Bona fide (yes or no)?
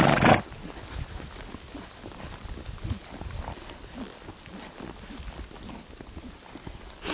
yes